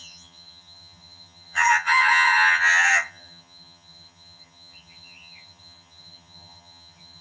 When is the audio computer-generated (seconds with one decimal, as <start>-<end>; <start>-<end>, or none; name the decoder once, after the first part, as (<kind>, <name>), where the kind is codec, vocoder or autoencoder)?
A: 0.0-7.2 (vocoder, HiFi-GAN)